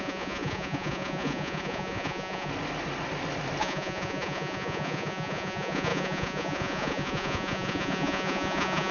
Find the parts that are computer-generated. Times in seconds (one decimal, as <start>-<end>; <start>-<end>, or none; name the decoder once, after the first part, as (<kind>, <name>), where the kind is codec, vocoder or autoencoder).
0.0-2.5 (vocoder, Vocos); 3.6-8.9